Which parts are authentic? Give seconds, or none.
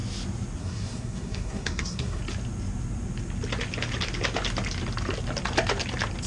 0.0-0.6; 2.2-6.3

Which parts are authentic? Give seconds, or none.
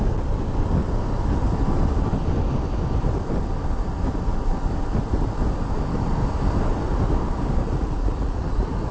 0.0-7.6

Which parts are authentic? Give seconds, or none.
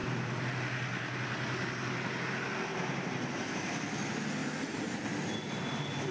0.0-2.7; 3.8-4.4; 5.6-6.1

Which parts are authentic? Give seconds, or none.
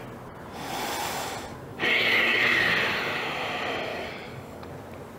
0.0-1.7; 2.7-3.9; 4.7-5.2